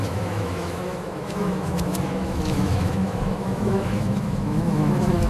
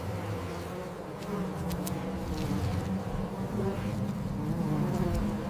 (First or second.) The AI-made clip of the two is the first